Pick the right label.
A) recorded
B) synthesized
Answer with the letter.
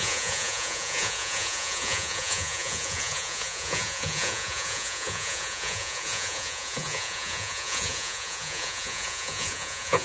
B